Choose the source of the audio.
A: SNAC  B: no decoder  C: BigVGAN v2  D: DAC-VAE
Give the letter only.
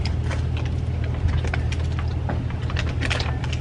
B